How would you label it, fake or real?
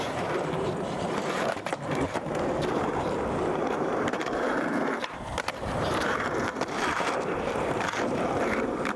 fake